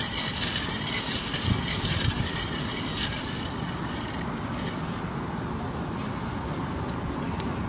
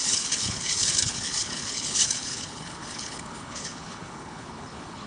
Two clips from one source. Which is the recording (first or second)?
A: first